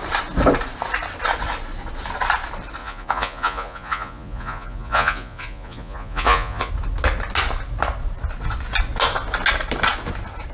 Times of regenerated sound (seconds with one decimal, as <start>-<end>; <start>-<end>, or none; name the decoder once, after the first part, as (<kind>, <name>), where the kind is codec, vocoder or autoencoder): 2.8-6.7 (vocoder, Vocos)